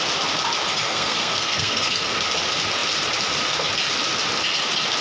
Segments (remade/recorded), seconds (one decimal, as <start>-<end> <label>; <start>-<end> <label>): 0.0-0.9 recorded; 0.9-2.1 remade; 2.1-5.0 recorded